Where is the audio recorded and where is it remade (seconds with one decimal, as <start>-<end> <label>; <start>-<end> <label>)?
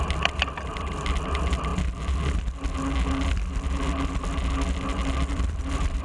0.0-1.7 remade; 1.7-5.3 recorded; 5.3-6.0 remade